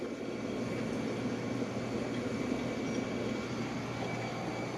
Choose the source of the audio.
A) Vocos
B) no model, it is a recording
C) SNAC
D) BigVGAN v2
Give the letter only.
B